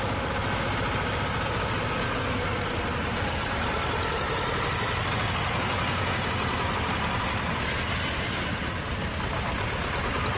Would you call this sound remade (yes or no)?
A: no